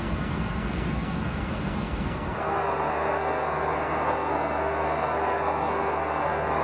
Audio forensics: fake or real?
fake